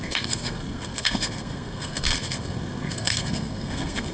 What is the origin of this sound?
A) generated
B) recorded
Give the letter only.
A